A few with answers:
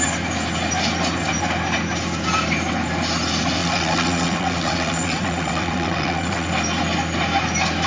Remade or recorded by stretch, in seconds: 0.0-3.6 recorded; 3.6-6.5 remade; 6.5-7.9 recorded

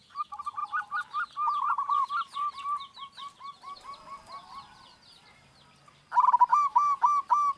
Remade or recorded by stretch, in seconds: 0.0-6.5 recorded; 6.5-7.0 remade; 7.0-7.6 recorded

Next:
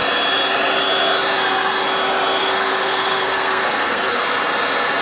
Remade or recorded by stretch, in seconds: 0.0-2.4 recorded; 2.4-4.2 remade; 4.2-5.0 recorded